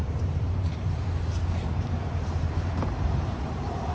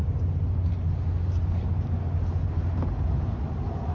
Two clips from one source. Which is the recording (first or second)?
second